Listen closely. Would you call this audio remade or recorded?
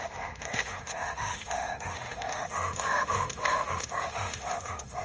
remade